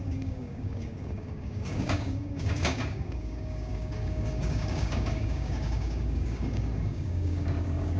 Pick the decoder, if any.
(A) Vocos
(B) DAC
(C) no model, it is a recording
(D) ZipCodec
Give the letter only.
B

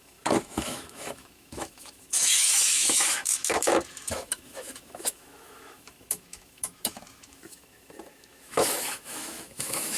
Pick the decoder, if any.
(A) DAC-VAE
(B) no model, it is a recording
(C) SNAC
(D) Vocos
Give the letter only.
A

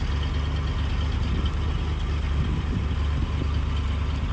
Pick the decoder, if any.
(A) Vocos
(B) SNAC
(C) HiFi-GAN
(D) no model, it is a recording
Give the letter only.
D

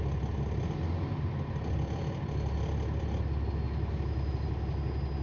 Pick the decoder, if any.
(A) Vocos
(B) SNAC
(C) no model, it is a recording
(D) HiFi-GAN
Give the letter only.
C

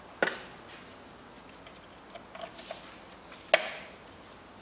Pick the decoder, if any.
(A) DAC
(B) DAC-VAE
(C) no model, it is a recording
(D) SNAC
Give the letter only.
C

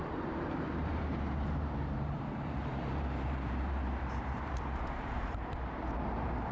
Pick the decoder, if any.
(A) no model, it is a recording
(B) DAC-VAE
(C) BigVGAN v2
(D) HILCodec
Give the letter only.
C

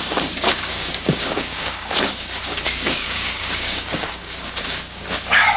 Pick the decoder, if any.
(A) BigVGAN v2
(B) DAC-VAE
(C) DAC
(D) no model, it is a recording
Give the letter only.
C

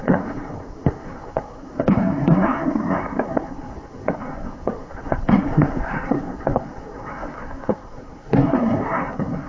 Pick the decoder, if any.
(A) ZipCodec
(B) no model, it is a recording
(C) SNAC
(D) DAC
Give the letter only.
C